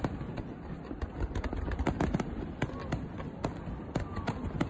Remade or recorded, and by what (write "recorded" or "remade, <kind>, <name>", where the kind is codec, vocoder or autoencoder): remade, vocoder, BigVGAN v2